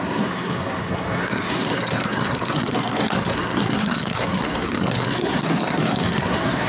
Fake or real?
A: fake